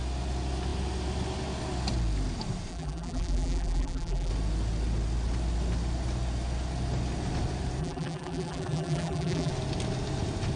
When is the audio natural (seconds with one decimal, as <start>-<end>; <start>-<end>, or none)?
0.0-2.7; 4.3-7.8; 9.5-10.6